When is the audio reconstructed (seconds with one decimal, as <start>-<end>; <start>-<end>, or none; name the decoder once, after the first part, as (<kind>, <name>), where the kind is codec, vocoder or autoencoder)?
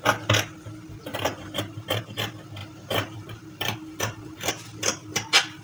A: 1.1-2.0 (vocoder, BigVGAN v2); 2.6-4.5